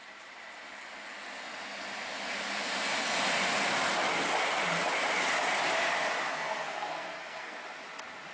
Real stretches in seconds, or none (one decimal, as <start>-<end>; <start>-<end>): 0.0-6.3; 7.6-8.3